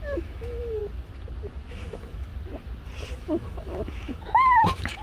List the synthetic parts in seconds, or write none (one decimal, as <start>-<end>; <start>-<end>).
0.0-0.8; 1.7-2.3; 3.1-5.0